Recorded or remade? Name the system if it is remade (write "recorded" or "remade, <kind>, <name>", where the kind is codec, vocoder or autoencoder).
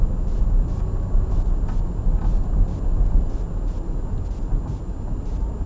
recorded